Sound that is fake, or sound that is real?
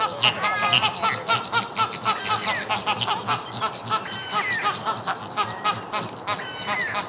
real